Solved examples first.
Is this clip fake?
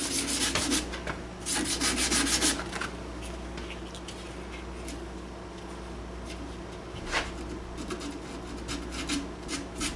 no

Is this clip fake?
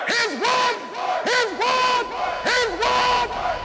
no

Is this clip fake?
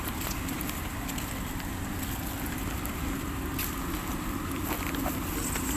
no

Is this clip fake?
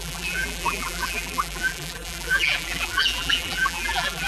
yes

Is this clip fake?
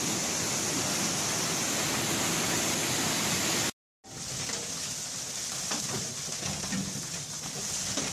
no